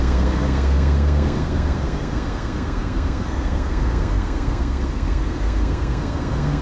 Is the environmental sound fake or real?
fake